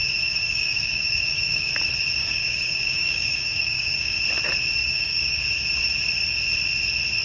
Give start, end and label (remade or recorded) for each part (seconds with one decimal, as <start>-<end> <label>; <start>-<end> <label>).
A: 0.0-1.7 remade; 1.7-2.2 recorded; 2.2-4.2 remade; 4.2-4.8 recorded; 4.8-5.4 remade; 5.4-7.2 recorded